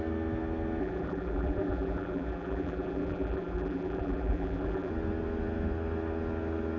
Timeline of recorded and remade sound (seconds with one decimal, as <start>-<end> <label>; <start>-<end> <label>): 0.0-0.8 recorded; 0.8-4.9 remade; 4.9-6.8 recorded